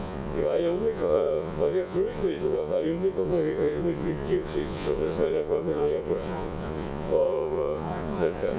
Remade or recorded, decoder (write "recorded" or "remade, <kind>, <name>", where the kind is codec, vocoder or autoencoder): remade, vocoder, Vocos